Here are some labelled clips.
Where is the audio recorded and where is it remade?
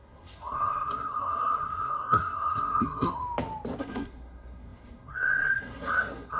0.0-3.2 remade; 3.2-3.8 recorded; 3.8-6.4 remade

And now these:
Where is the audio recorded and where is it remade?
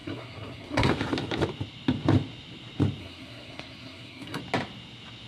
0.0-0.9 remade; 0.9-3.0 recorded; 3.0-4.4 remade; 4.4-5.3 recorded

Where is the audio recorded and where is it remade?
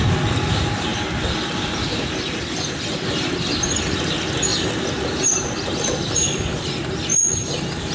0.0-7.9 recorded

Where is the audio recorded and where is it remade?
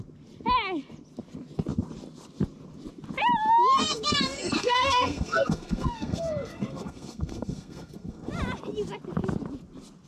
0.0-3.8 recorded; 3.8-8.3 remade; 8.3-10.1 recorded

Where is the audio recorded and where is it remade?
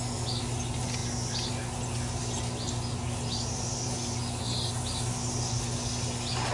0.0-6.5 recorded